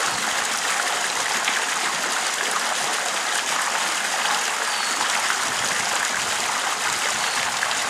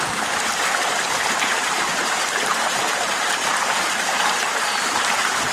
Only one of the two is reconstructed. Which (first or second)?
second